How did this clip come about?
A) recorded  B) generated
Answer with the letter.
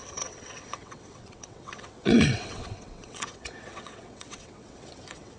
B